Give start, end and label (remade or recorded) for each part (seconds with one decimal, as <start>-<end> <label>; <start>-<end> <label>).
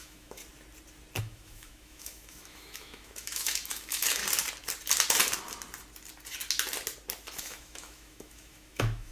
0.0-0.4 remade; 0.4-1.2 recorded; 1.2-4.2 remade; 4.2-7.4 recorded; 7.4-9.1 remade